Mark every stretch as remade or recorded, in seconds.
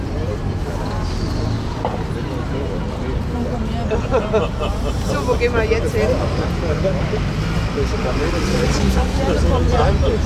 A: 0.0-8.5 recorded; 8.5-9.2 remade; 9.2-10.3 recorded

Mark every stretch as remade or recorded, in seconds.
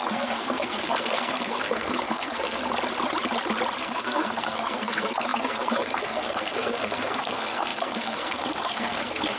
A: 0.0-2.6 remade; 2.6-3.8 recorded; 3.8-9.4 remade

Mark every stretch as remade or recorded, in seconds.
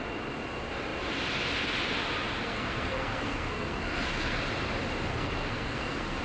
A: 0.0-2.4 recorded; 2.4-4.4 remade; 4.4-5.1 recorded; 5.1-6.2 remade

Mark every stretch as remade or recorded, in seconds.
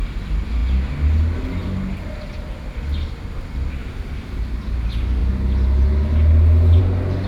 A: 0.0-3.8 recorded; 3.8-4.4 remade; 4.4-7.3 recorded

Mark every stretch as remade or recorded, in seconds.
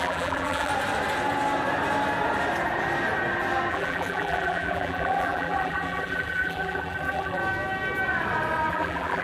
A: 0.0-0.7 remade; 0.7-3.7 recorded; 3.7-7.4 remade; 7.4-8.7 recorded; 8.7-9.2 remade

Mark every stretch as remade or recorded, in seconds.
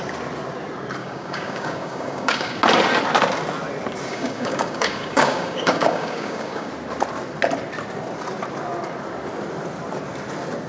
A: 0.0-1.0 recorded; 1.0-2.6 remade; 2.6-4.1 recorded; 4.1-6.7 remade; 6.7-10.7 recorded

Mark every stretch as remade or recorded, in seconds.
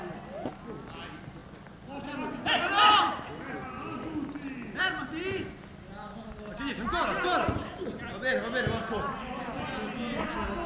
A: 0.0-10.7 recorded